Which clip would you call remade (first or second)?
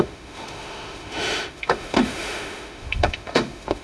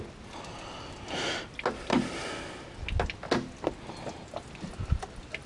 first